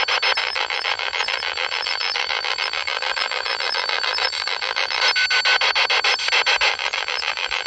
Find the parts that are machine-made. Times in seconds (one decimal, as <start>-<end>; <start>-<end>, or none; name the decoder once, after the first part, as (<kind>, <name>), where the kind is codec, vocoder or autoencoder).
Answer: 0.4-5.0 (vocoder, BigVGAN v2); 6.7-7.7